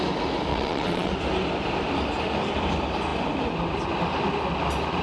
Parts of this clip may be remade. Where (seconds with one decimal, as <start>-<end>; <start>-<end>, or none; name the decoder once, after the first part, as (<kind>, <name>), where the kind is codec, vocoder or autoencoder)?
0.5-1.1 (vocoder, WaveNeXt)